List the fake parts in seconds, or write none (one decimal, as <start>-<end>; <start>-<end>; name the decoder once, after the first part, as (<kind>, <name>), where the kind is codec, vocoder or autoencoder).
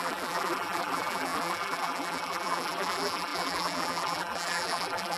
0.0-5.2 (vocoder, BigVGAN v2)